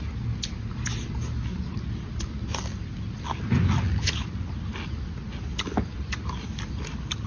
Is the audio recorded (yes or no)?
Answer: yes